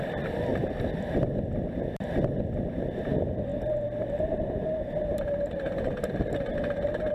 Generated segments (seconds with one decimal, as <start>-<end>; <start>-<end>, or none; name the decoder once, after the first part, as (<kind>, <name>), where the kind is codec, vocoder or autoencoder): 0.0-0.5 (vocoder, BigVGAN v2); 2.7-3.5